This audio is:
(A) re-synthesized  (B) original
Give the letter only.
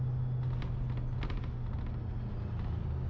B